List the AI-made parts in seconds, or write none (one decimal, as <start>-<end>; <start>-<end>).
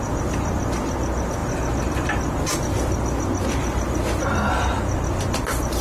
none